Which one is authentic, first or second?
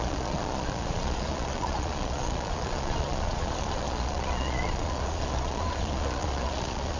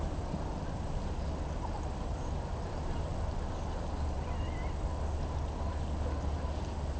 second